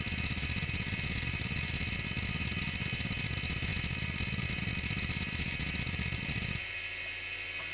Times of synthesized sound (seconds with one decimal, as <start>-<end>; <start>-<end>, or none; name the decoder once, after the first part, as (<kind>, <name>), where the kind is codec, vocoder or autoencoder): none